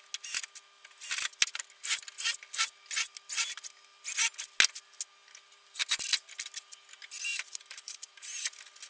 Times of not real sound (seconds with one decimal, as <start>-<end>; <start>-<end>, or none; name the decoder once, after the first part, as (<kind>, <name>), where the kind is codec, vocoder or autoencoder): 7.3-8.5 (vocoder, BigVGAN v2)